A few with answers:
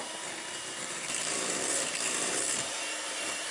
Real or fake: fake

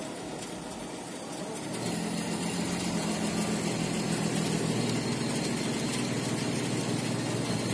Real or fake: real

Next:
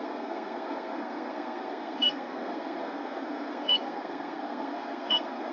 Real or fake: fake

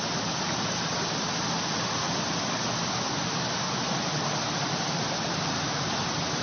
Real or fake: real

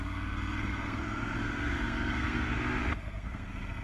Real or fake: fake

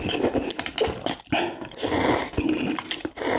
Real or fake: real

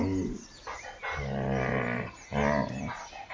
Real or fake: real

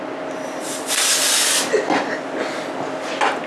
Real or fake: real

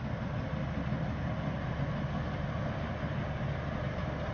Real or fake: real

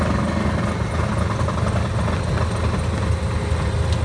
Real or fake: real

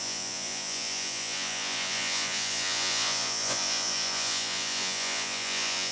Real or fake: fake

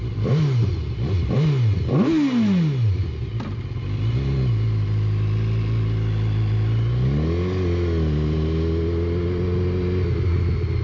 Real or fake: real